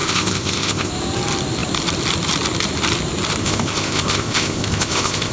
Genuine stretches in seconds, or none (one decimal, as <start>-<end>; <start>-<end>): 0.9-3.4